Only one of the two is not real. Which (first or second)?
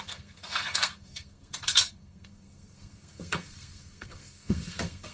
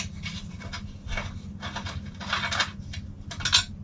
first